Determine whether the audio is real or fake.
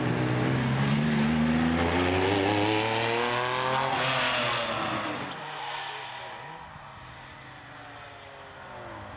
real